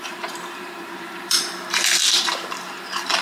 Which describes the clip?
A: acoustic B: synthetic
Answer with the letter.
B